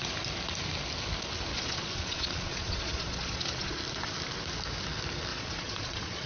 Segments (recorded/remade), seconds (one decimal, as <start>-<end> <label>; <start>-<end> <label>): 0.0-1.5 recorded; 1.5-3.8 remade; 3.8-5.3 recorded; 5.3-6.3 remade